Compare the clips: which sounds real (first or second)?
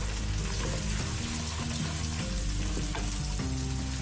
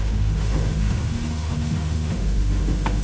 first